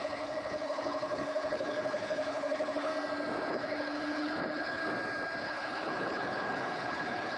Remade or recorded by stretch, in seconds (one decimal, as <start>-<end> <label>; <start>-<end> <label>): 0.0-2.9 remade; 2.9-3.5 recorded; 3.5-4.8 remade; 4.8-5.4 recorded; 5.4-7.4 remade